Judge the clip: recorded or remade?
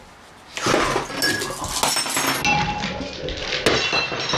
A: recorded